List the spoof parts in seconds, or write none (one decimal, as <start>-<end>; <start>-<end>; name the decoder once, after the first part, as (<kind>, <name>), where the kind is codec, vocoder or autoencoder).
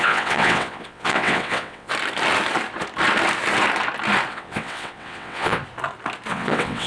0.0-1.9 (vocoder, WaveNeXt); 4.3-5.6; 6.3-6.9